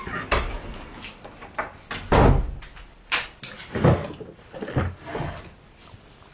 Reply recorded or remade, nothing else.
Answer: recorded